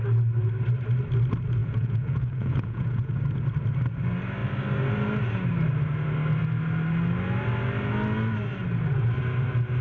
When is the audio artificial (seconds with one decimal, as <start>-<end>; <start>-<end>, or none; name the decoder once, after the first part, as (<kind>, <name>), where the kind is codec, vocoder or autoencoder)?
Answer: 1.6-3.1 (vocoder, Vocos)